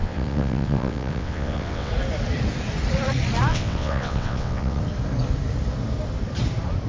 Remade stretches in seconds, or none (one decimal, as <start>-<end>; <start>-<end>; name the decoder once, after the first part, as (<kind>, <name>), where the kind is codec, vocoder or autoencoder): 0.0-1.9 (vocoder, WaveNeXt); 3.5-4.8